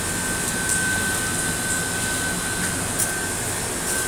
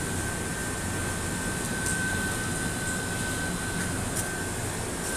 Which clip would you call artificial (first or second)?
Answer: second